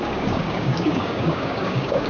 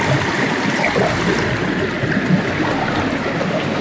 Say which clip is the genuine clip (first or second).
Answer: second